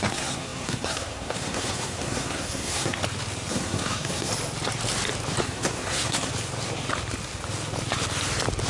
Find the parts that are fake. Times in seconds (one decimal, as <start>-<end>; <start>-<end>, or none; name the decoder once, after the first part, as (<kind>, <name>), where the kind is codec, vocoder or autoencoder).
0.0-3.0 (codec, SNAC); 3.5-4.3; 5.4-6.3